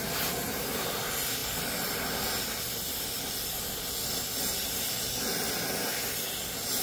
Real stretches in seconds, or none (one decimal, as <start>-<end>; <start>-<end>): 0.0-6.8

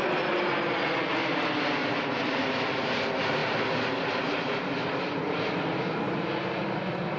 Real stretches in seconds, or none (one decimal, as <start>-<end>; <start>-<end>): 0.0-7.2